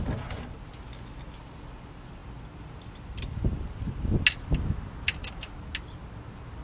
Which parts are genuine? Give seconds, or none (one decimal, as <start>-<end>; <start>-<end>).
0.0-6.6